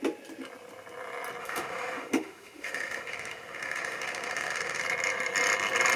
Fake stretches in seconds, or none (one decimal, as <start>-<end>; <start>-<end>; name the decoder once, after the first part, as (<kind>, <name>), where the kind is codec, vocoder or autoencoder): 1.4-4.8 (autoencoder, DAC-VAE)